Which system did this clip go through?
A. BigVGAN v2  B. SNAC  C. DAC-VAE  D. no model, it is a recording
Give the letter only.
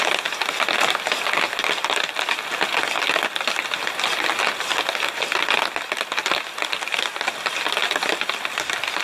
D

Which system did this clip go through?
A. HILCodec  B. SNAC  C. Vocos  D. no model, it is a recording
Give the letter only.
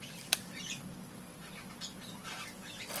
D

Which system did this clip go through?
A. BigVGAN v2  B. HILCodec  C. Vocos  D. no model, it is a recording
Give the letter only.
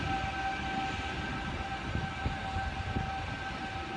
D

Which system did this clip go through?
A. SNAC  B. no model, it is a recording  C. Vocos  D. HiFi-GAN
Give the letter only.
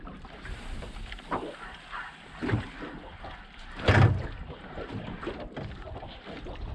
B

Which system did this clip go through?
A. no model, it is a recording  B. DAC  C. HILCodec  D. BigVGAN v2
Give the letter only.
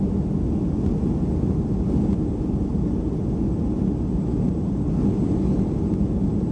A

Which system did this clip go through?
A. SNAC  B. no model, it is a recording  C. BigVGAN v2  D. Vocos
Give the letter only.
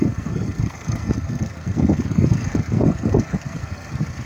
A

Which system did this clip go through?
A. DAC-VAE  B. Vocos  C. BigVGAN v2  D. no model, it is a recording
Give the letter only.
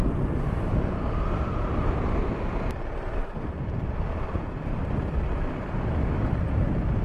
D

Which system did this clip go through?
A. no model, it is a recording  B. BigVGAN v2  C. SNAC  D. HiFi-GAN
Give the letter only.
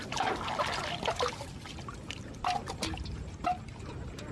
A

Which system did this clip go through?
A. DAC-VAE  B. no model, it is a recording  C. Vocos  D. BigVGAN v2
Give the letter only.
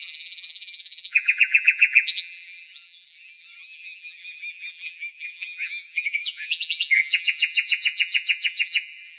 D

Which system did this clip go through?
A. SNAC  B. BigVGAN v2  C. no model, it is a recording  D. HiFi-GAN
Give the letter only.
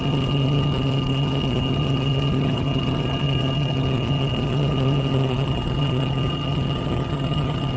D